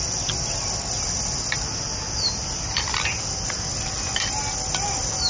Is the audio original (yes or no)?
yes